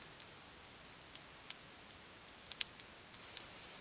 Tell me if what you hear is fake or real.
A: real